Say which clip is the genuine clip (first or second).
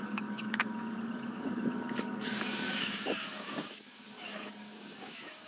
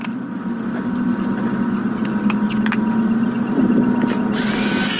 second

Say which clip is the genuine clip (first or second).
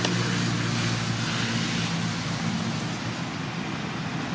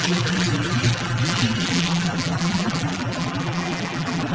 first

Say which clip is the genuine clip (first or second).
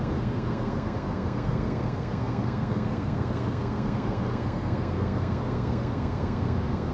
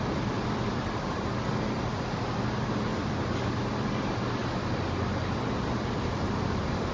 second